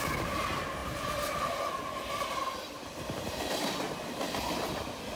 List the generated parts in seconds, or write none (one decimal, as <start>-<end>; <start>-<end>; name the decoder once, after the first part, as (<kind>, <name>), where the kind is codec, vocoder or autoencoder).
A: none